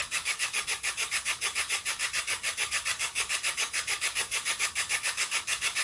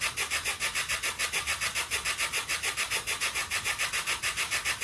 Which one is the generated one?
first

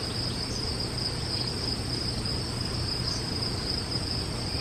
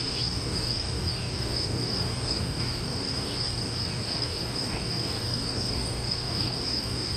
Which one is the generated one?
second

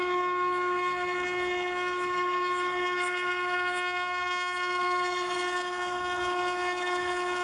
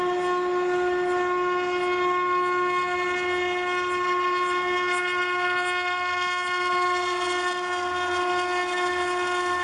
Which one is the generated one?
first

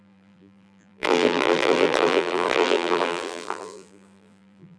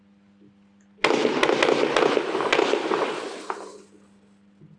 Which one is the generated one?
first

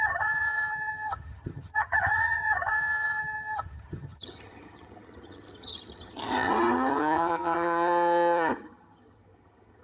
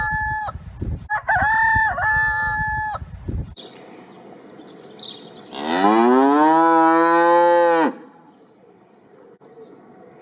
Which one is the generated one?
first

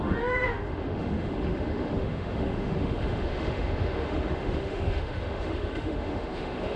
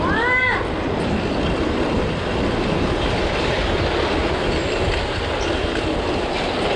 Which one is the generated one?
first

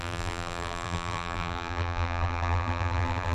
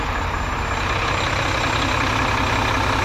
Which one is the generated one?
first